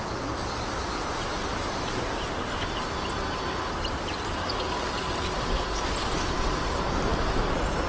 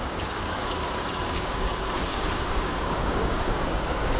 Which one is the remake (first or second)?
second